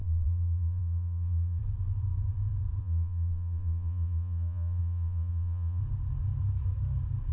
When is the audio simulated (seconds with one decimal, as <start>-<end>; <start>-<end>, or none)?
0.0-1.6; 2.8-5.8